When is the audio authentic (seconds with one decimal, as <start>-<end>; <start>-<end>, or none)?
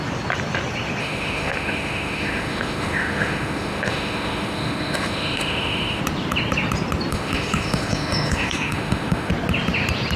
0.0-1.0; 6.0-7.1; 9.3-10.2